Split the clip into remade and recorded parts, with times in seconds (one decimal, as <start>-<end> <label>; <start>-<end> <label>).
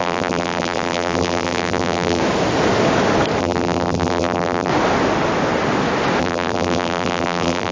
0.0-2.2 remade; 2.2-3.4 recorded; 3.4-4.7 remade; 4.7-6.2 recorded; 6.2-7.7 remade